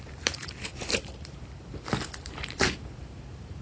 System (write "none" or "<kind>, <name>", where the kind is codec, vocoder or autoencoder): vocoder, BigVGAN v2